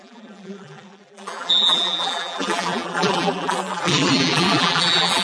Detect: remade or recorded remade